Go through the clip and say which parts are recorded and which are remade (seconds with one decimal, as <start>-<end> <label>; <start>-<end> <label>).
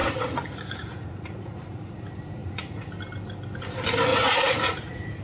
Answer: 0.0-2.0 remade; 2.0-2.4 recorded; 2.4-2.9 remade; 2.9-4.1 recorded; 4.1-5.2 remade